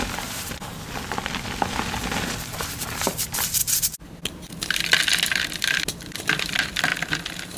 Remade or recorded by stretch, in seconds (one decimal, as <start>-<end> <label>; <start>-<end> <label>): 0.0-3.6 remade; 3.6-5.2 recorded; 5.2-6.9 remade; 6.9-7.6 recorded